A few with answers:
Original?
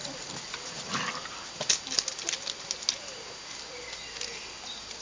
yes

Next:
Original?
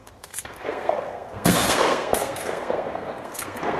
no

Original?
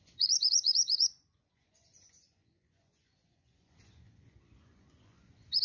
no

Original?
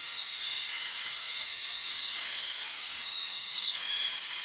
no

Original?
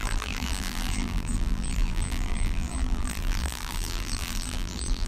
no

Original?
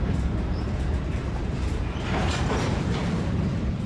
no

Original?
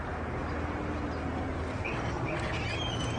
yes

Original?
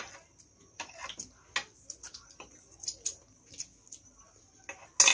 yes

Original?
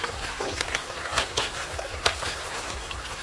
no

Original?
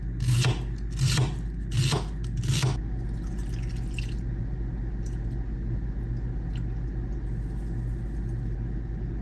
yes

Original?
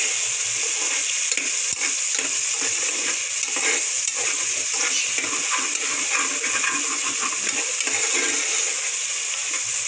yes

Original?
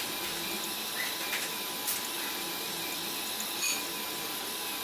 yes